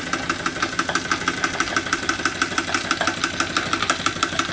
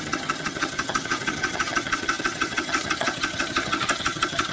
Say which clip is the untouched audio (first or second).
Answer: first